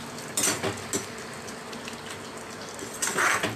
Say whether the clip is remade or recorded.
recorded